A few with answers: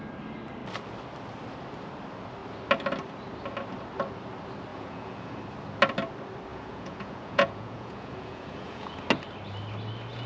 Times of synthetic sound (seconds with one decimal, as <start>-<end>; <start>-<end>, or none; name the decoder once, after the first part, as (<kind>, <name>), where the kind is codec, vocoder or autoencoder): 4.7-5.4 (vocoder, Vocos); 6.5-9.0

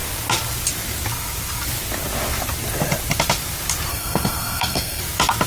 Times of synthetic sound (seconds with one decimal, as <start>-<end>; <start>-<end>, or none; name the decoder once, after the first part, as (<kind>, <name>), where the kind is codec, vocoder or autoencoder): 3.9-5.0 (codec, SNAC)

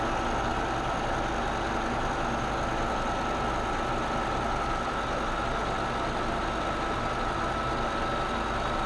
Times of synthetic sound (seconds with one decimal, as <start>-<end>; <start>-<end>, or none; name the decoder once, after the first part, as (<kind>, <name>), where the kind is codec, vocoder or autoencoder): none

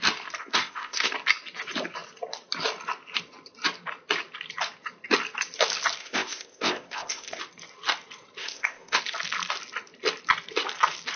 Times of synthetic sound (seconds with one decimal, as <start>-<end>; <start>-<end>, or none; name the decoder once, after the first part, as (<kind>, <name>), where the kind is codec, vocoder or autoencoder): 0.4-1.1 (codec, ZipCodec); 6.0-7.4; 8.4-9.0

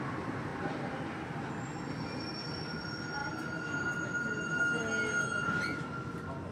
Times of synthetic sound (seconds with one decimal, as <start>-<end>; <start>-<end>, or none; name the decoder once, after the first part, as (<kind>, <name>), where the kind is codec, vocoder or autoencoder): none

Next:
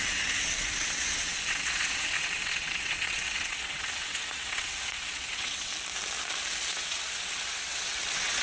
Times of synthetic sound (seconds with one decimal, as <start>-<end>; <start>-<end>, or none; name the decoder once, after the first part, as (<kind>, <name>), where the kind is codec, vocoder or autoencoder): 0.0-5.7 (vocoder, WaveNeXt); 6.7-8.4

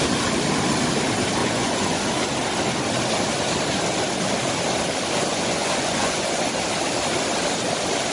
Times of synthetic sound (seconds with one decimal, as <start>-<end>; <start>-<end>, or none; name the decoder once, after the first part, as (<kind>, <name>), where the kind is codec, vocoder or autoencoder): 1.4-2.0 (vocoder, Vocos); 5.3-6.4

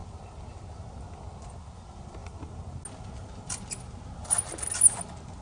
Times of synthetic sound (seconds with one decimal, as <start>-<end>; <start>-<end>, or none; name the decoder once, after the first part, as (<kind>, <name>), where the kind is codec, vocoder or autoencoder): none